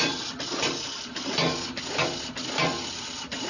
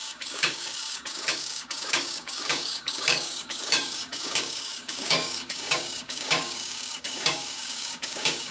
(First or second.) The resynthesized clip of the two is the second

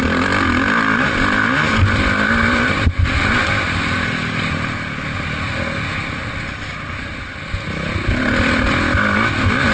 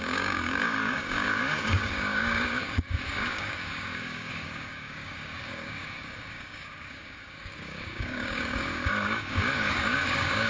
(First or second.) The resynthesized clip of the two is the second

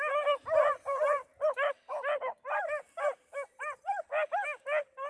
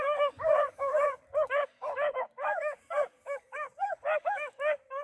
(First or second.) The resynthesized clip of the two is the second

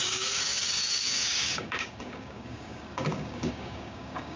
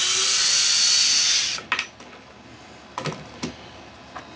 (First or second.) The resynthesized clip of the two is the first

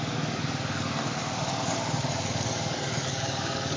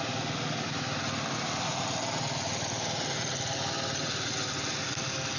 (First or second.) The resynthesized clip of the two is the first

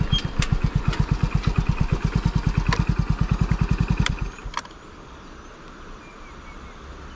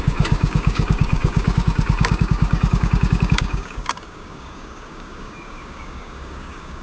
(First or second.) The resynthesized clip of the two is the second